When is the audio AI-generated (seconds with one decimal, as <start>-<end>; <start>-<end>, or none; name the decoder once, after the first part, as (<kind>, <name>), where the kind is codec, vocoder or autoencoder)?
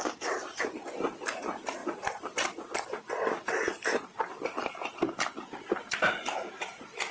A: none